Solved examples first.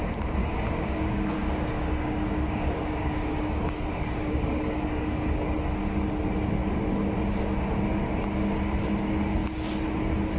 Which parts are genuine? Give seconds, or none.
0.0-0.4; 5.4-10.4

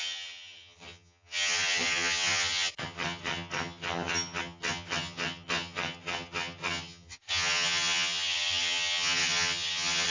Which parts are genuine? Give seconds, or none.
none